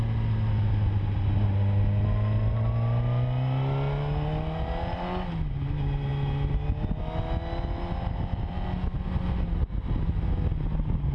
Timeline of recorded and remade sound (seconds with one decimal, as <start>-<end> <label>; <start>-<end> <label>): 0.0-11.1 recorded